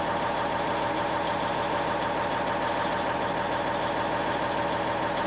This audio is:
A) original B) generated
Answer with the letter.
A